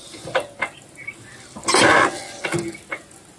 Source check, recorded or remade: recorded